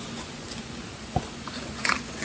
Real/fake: fake